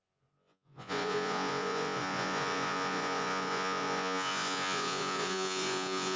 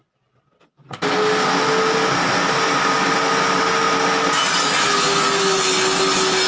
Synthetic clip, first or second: first